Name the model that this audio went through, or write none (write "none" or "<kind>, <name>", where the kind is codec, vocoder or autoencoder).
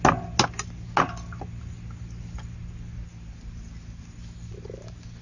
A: none